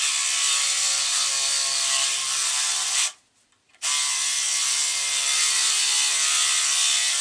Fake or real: real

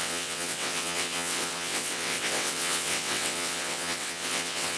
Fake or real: fake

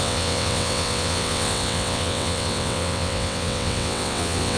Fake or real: fake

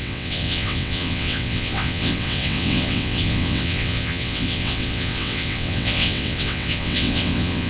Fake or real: fake